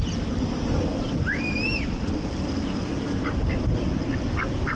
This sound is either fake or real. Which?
real